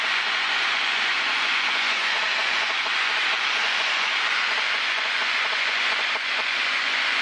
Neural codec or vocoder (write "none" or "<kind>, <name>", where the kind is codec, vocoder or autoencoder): vocoder, Vocos